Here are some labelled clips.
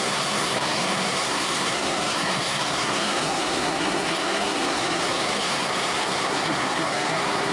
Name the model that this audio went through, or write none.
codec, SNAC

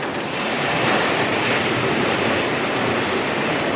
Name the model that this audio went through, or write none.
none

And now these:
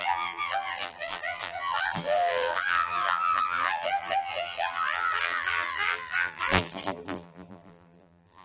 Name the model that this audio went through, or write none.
vocoder, BigVGAN v2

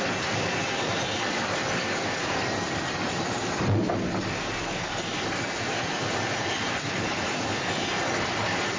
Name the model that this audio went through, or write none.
none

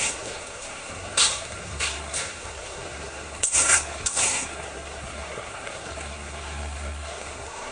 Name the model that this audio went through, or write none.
codec, SNAC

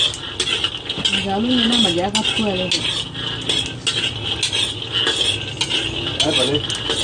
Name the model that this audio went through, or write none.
none